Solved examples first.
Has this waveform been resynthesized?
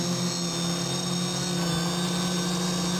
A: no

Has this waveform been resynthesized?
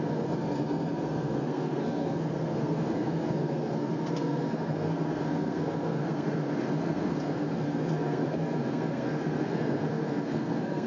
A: yes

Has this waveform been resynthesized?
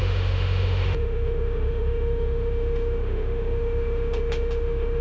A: yes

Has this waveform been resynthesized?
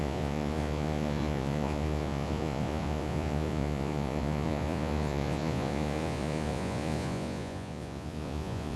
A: yes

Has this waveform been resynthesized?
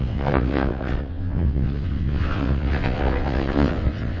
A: yes